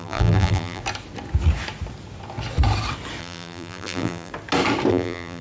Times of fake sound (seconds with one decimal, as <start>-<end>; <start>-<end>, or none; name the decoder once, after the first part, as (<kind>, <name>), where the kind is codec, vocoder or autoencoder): 0.0-0.8 (vocoder, BigVGAN v2); 3.2-4.3; 4.9-5.4